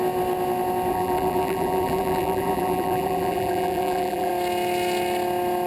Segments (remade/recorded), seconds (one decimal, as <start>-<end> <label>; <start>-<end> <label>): 0.0-0.9 recorded; 0.9-4.3 remade; 4.3-5.7 recorded